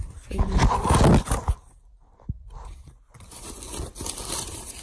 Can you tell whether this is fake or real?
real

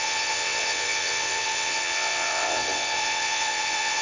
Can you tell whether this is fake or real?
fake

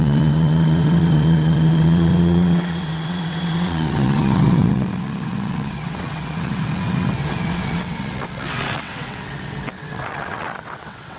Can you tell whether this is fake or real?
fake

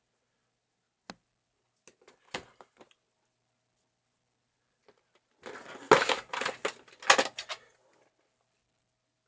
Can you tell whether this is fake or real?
real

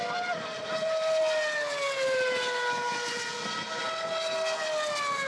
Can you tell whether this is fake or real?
real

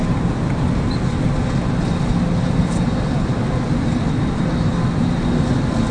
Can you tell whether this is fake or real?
real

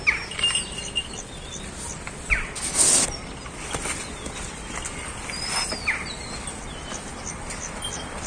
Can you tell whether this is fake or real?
real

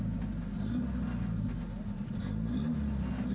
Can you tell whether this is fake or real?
real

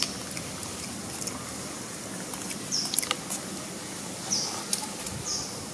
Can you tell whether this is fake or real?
real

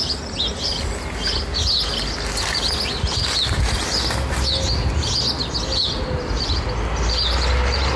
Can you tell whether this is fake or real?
real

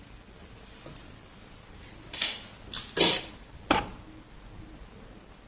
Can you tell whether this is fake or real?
real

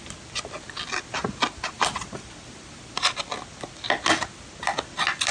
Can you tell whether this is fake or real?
real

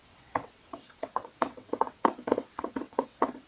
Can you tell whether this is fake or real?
fake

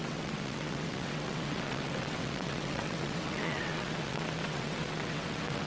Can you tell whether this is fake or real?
fake